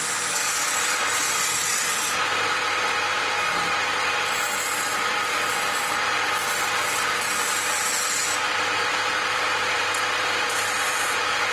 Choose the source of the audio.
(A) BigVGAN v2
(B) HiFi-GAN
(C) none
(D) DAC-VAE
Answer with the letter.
C